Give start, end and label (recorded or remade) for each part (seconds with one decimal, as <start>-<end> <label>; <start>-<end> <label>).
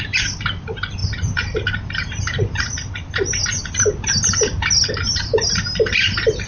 0.0-6.5 recorded